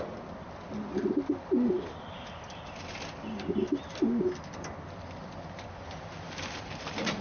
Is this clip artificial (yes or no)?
no